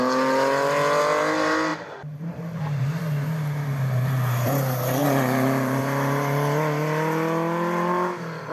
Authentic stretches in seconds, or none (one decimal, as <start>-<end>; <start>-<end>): 0.0-1.7; 3.0-5.0; 5.8-8.5